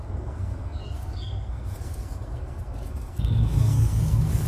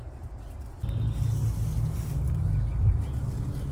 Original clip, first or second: second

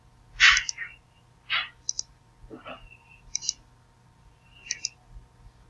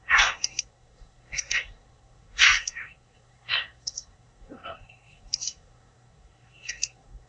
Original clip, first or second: first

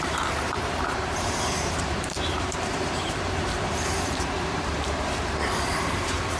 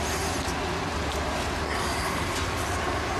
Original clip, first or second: second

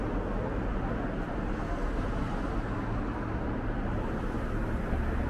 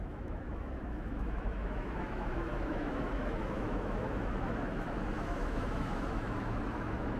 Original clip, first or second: first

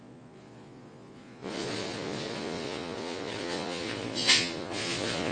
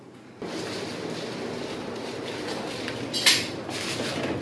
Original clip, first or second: second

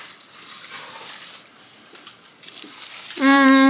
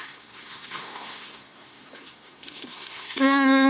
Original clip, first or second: first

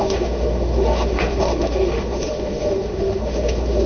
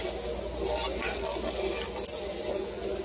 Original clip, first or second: second